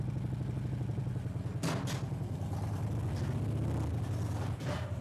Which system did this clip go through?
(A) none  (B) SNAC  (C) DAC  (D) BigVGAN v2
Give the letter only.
A